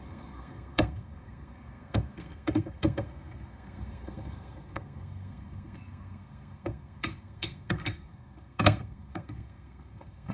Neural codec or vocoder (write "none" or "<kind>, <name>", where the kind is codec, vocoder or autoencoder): codec, SNAC